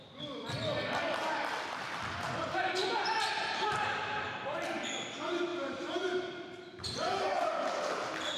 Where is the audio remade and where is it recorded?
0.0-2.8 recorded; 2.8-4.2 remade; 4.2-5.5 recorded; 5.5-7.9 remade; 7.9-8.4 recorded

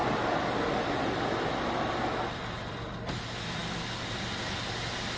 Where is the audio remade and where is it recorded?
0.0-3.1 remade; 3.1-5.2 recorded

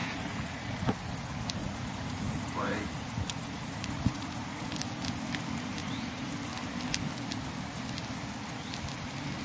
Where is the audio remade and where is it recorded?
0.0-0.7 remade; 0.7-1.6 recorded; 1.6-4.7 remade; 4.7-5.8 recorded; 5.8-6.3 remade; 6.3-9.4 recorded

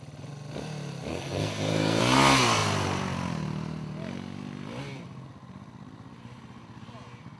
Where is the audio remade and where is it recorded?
0.0-1.1 recorded; 1.1-2.0 remade; 2.0-7.4 recorded